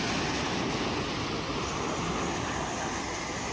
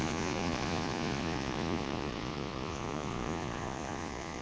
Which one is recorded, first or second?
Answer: first